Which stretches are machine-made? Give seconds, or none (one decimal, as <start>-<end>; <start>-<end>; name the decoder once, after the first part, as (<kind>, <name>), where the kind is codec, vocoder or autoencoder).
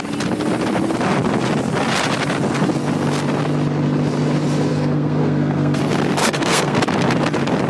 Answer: 4.7-5.8 (codec, SNAC); 6.2-6.8